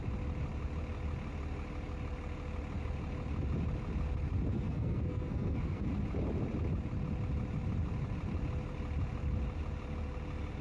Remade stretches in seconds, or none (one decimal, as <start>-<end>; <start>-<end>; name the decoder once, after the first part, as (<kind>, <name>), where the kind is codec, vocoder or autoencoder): 4.5-5.9 (codec, SNAC)